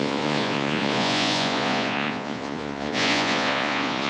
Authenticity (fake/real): fake